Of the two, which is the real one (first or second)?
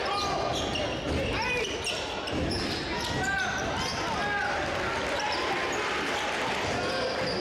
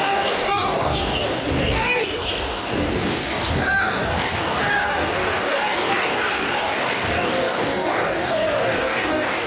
first